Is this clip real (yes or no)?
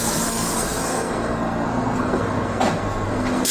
no